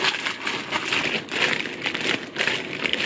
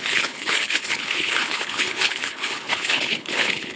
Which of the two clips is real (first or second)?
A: first